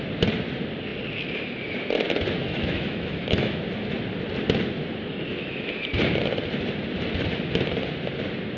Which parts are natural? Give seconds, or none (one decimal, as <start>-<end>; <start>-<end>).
0.0-2.4; 3.6-5.1; 5.7-8.6